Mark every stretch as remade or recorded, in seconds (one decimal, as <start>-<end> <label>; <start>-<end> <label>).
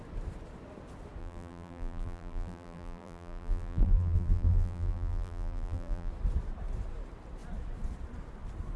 0.0-1.2 recorded; 1.2-6.1 remade; 6.1-8.8 recorded